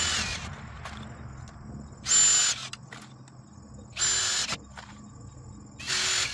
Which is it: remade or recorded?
recorded